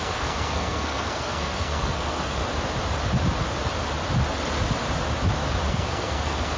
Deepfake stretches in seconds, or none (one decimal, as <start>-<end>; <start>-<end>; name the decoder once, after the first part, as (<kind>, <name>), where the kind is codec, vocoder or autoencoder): 0.0-2.4 (codec, SNAC); 5.7-6.6